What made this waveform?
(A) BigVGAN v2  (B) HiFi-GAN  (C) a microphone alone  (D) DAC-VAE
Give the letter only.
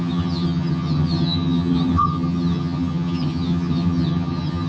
B